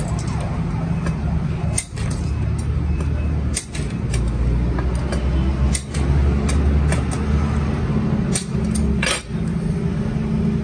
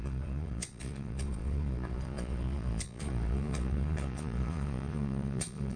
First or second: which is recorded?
first